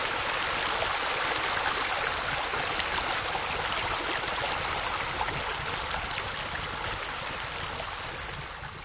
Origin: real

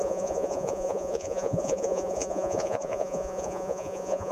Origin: fake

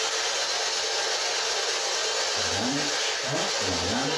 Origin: real